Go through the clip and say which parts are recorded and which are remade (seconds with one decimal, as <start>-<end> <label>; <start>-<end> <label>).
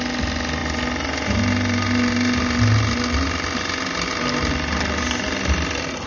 0.0-6.1 recorded